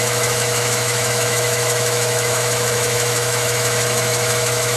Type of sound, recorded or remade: remade